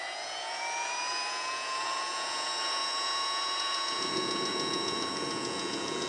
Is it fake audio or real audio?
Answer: fake